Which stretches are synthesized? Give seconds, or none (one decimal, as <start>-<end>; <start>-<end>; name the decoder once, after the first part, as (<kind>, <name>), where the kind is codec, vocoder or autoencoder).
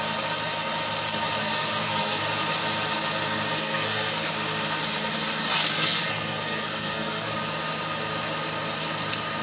1.4-2.2 (codec, SNAC); 3.5-4.3; 5.6-7.3